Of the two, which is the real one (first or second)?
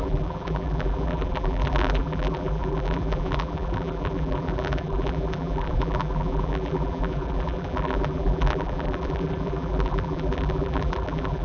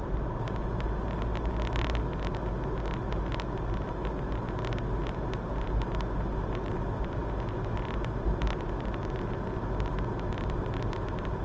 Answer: second